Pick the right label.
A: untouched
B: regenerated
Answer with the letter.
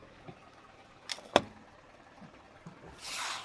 B